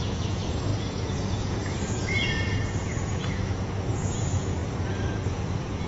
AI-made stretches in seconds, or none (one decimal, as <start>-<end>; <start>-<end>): 0.0-4.6; 5.3-5.9

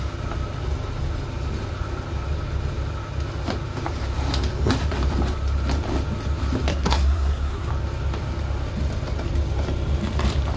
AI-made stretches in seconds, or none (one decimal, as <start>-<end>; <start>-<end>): 6.7-7.7